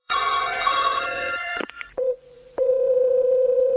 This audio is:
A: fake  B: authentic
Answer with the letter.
A